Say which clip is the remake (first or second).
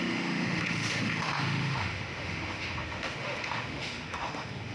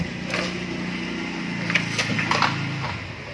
first